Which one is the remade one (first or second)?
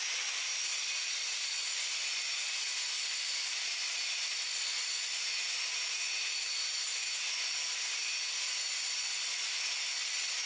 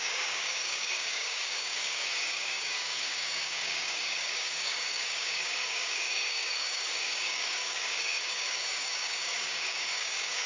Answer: second